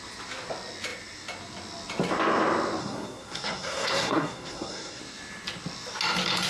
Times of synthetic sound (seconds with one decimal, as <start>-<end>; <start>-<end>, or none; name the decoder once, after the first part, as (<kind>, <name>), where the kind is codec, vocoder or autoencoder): 2.8-5.0 (codec, SNAC)

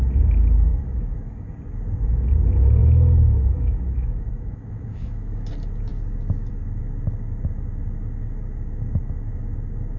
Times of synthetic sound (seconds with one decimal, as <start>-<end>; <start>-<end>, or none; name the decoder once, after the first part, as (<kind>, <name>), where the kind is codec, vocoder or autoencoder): 0.7-1.5 (autoencoder, DAC-VAE); 2.8-5.5